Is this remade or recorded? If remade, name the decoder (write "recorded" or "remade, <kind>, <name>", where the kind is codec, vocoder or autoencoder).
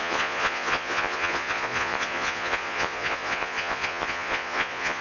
remade, vocoder, Vocos